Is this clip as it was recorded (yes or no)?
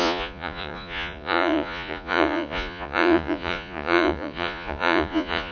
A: no